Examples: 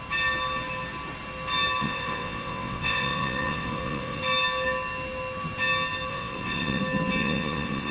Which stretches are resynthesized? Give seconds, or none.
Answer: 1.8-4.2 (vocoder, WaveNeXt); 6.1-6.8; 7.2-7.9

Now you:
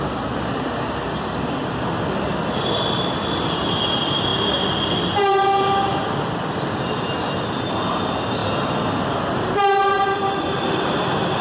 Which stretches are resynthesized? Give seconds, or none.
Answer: none

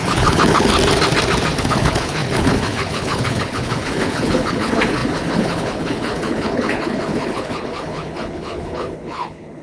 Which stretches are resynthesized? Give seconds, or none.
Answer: 0.0-0.7 (codec, HILCodec); 1.6-9.6

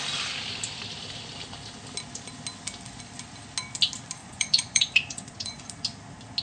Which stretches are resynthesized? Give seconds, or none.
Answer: 4.2-5.6 (vocoder, Vocos)

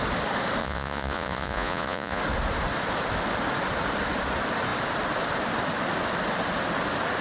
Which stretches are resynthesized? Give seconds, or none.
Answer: 0.6-2.2 (vocoder, Vocos)

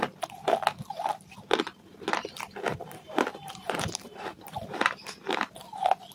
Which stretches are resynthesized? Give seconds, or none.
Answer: 2.7-5.1 (vocoder, BigVGAN v2)

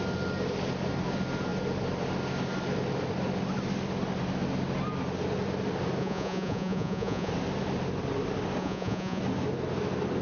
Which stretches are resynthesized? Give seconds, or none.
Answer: 6.0-7.3 (vocoder, Vocos); 8.6-9.2

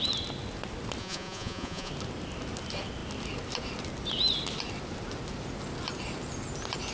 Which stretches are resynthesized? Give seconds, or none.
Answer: 1.0-1.9 (vocoder, Vocos)